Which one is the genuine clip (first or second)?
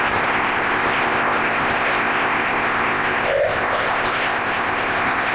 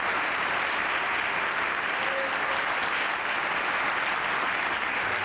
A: second